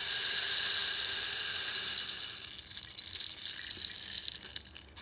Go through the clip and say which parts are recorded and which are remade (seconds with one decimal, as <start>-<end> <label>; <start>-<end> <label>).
0.0-5.0 recorded